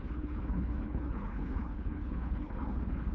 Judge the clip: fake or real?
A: fake